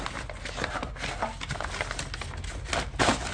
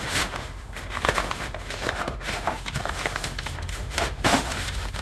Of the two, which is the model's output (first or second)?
second